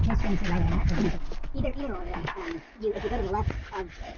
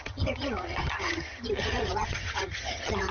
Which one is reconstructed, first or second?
second